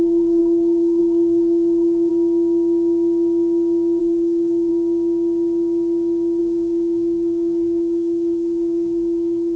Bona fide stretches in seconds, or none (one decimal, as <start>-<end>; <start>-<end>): 2.1-4.0; 4.7-6.4